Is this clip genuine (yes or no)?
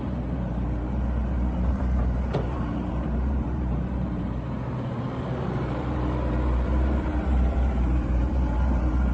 no